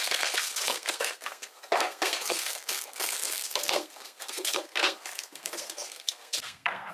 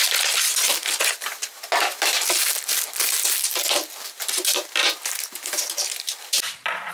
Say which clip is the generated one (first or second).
first